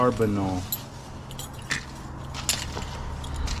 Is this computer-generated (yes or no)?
no